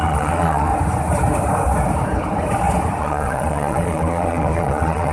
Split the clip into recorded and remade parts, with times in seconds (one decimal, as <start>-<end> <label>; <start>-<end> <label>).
0.0-0.7 remade; 0.7-3.0 recorded; 3.0-5.1 remade

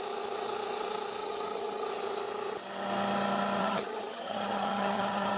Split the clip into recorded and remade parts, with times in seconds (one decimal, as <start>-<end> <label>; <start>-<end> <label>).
0.0-1.2 recorded; 1.2-1.9 remade; 1.9-3.6 recorded; 3.6-5.4 remade

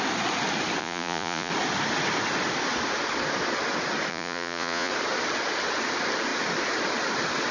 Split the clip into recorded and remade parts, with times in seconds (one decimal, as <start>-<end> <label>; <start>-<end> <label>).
0.0-0.8 recorded; 0.8-1.5 remade; 1.5-4.1 recorded; 4.1-4.9 remade; 4.9-7.5 recorded

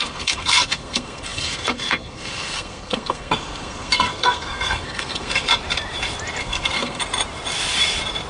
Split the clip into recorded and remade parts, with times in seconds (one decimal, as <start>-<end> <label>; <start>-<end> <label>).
0.0-5.5 remade; 5.5-6.4 recorded; 6.4-7.0 remade; 7.0-8.3 recorded

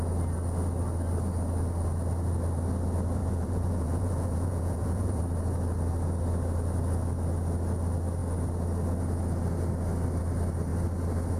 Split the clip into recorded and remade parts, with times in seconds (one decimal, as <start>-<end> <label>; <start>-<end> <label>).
0.0-3.2 recorded; 3.2-5.2 remade; 5.2-11.4 recorded

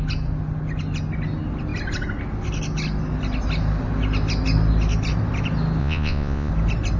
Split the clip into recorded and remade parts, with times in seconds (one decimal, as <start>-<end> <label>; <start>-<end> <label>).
0.0-5.8 recorded; 5.8-6.5 remade; 6.5-7.0 recorded

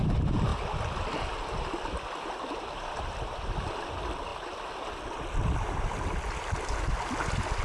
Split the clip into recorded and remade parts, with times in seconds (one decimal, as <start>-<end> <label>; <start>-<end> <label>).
0.0-7.6 recorded

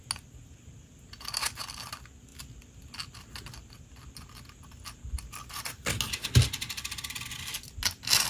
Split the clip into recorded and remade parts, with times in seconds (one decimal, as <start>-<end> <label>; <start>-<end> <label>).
0.0-8.3 recorded